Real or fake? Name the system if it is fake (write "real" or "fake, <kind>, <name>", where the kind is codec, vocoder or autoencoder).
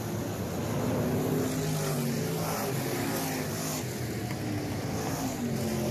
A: real